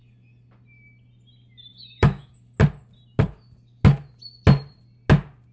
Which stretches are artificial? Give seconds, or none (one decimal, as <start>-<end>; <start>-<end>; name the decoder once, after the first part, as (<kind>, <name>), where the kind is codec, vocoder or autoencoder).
1.7-2.3 (autoencoder, DAC-VAE)